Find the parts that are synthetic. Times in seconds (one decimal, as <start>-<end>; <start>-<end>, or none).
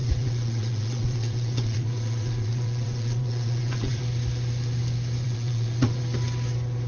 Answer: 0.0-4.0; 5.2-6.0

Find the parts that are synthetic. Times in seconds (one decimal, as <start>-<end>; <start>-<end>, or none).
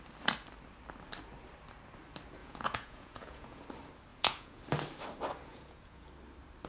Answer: 2.4-3.6; 4.1-4.6; 5.5-6.1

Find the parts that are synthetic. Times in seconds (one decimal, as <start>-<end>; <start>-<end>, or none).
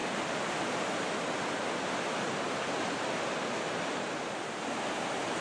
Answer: none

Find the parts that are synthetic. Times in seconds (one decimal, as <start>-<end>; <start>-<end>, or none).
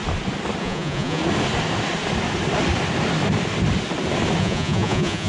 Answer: 0.6-1.2; 4.4-5.3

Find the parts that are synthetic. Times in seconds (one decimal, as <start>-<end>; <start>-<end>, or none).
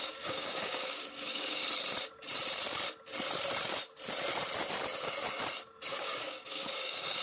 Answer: 0.0-1.6; 5.9-7.2